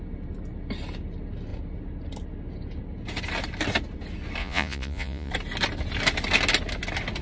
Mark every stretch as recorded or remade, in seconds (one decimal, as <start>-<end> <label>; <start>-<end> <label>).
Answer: 0.0-4.4 recorded; 4.4-5.3 remade; 5.3-7.2 recorded